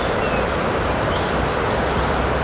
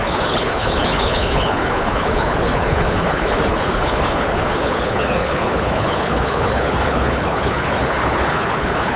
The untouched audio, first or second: first